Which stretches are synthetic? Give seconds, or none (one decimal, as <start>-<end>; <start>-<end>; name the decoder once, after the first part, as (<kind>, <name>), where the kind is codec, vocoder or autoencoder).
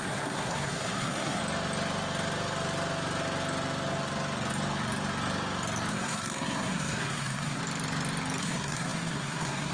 0.0-1.4 (codec, SNAC); 5.9-7.6; 8.4-9.7